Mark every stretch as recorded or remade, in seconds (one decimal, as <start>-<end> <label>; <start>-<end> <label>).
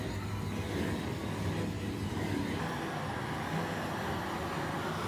0.0-5.1 recorded